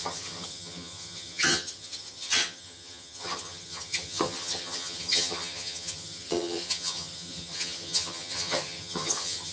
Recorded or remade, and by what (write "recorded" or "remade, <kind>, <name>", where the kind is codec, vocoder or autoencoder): remade, vocoder, HiFi-GAN